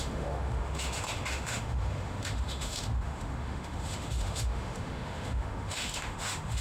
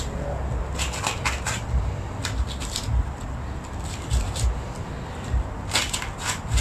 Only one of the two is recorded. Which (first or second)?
second